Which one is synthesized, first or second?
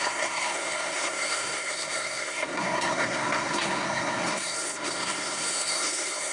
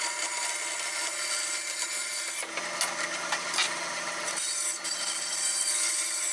first